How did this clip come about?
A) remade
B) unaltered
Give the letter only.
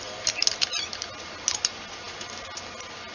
B